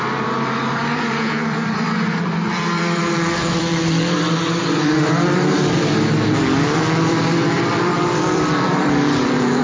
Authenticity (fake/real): fake